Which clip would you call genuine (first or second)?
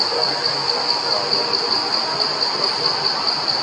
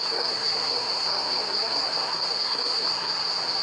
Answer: first